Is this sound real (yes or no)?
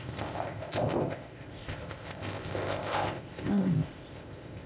no